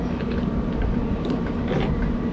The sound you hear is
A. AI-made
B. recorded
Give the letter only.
B